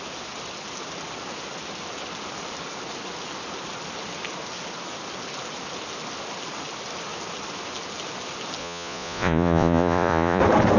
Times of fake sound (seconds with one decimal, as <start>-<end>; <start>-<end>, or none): 8.6-10.4